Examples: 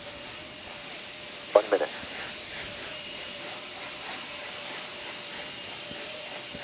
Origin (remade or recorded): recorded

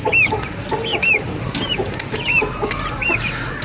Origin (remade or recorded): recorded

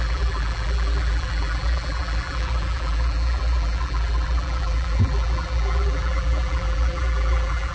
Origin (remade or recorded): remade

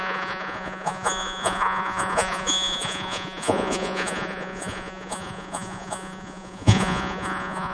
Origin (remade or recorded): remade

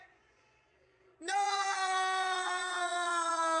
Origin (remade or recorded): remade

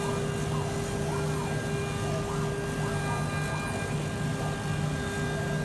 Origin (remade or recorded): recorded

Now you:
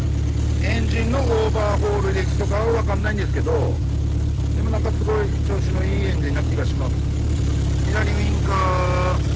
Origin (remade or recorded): recorded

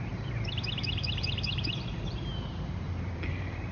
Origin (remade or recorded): remade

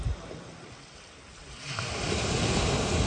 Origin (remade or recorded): recorded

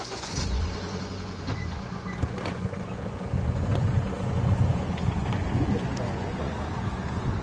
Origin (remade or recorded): remade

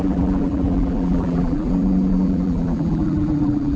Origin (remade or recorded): remade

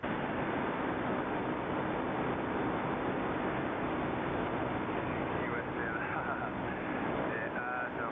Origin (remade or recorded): recorded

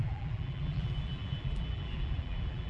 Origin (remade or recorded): remade